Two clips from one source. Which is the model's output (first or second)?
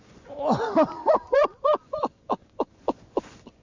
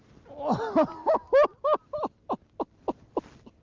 first